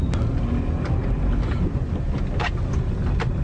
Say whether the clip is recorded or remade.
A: recorded